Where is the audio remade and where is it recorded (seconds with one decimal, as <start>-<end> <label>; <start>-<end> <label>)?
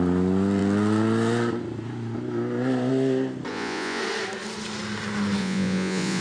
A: 0.0-3.5 recorded; 3.5-4.0 remade; 4.0-5.4 recorded; 5.4-6.2 remade